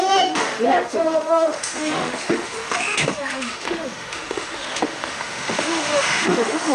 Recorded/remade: remade